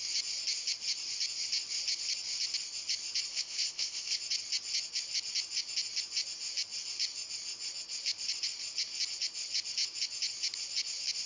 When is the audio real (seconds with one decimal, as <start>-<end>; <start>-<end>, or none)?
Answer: 0.0-3.3; 4.2-11.3